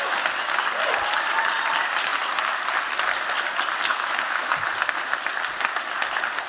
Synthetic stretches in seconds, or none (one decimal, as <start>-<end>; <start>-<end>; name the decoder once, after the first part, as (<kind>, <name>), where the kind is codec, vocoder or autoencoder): 3.9-4.5 (autoencoder, DAC-VAE)